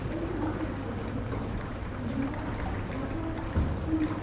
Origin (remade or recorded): recorded